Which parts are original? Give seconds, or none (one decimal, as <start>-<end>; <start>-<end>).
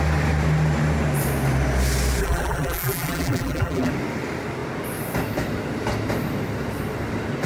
0.0-2.2; 3.9-7.5